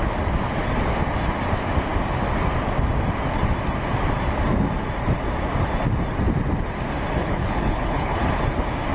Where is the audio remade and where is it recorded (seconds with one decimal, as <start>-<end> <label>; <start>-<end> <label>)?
0.0-7.2 recorded; 7.2-8.2 remade; 8.2-8.9 recorded